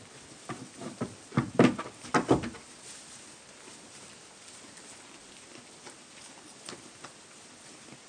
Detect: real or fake real